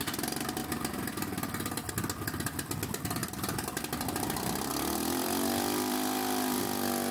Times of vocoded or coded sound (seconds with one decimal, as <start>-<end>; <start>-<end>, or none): 0.6-1.9; 3.2-3.8; 4.7-6.6